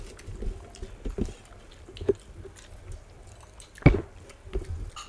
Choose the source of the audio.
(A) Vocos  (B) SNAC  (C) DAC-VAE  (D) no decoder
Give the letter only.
D